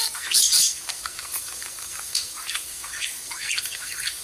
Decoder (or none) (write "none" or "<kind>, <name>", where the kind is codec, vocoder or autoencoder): codec, SNAC